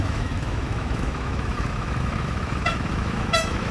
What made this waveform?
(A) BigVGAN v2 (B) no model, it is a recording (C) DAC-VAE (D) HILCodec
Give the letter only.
C